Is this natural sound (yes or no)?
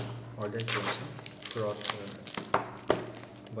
yes